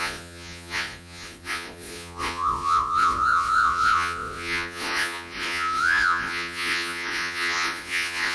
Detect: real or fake fake